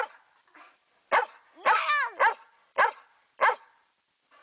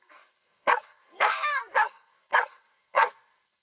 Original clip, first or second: first